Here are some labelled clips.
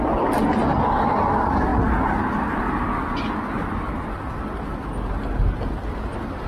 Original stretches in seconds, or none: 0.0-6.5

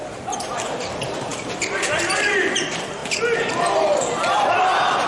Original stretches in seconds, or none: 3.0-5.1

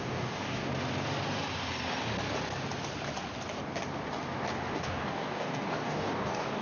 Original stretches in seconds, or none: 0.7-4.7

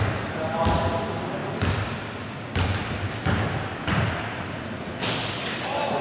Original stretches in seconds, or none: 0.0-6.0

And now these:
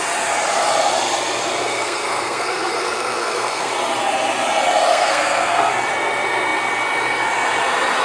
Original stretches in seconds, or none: 0.0-1.6; 3.7-4.9; 5.7-8.0